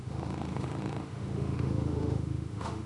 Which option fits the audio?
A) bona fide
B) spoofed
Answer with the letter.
B